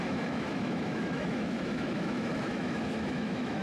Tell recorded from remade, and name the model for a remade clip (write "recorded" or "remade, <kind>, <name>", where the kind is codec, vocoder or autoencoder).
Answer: remade, autoencoder, DAC-VAE